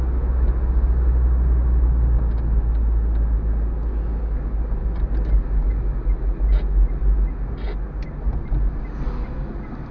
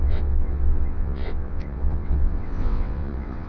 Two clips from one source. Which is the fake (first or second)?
second